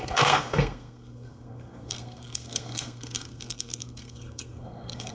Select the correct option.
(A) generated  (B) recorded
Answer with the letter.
A